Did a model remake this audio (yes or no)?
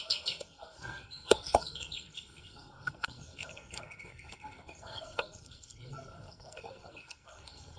yes